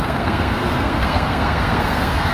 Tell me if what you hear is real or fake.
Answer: fake